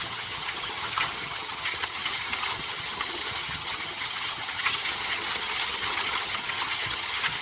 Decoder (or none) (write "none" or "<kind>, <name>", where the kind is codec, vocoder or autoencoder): vocoder, HiFi-GAN